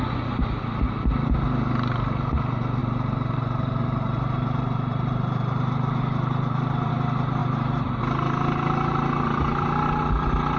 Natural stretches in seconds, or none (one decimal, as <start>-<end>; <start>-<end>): 0.0-2.8; 6.9-7.4; 8.0-10.6